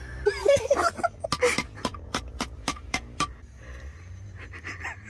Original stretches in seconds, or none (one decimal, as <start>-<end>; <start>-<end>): 0.0-1.9; 3.4-5.1